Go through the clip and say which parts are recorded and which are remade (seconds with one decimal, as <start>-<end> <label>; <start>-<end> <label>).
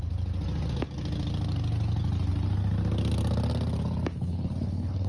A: 0.0-4.1 recorded; 4.1-5.1 remade